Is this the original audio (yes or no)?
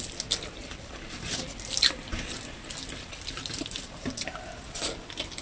yes